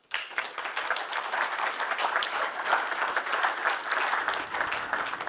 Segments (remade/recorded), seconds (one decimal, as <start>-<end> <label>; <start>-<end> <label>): 0.0-0.6 remade; 0.6-2.2 recorded; 2.2-2.7 remade; 2.7-5.3 recorded